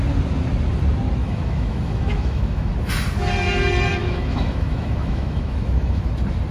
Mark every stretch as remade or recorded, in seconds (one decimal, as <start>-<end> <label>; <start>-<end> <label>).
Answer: 0.0-1.2 recorded; 1.2-2.7 remade; 2.7-4.0 recorded; 4.0-6.1 remade; 6.1-6.5 recorded